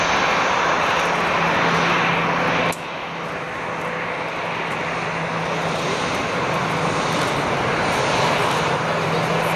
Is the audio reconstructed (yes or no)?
no